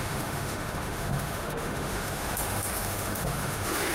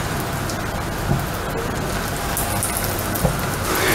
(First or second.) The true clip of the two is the second